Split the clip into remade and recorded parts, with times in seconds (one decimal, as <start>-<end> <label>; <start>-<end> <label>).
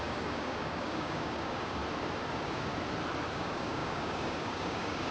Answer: 0.0-1.8 remade; 1.8-2.3 recorded; 2.3-2.7 remade; 2.7-3.3 recorded; 3.3-5.1 remade